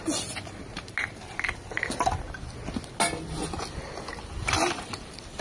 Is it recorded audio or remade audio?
recorded